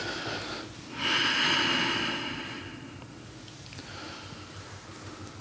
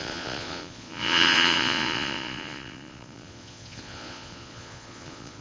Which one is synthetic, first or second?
second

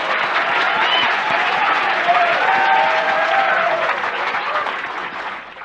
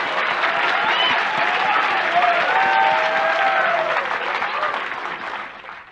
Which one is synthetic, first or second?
first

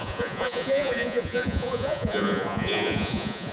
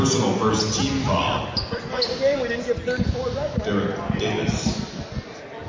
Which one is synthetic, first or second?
first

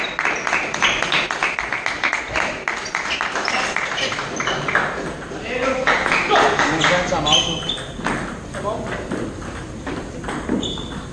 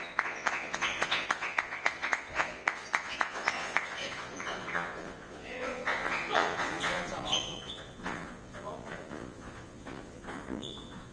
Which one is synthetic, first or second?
second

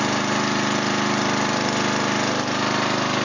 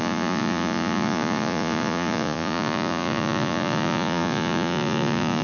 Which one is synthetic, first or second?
second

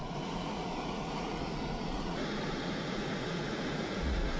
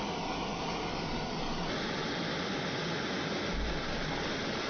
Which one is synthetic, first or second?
first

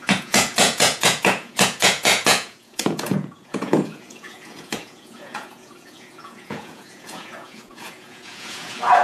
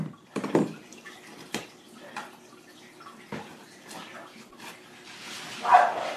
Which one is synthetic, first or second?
first